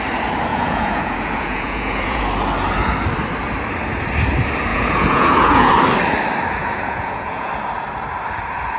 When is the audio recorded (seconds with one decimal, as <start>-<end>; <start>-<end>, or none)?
0.0-0.5; 2.2-4.7; 5.7-6.6; 7.5-8.8